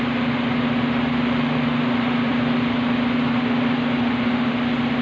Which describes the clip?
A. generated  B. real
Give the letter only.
A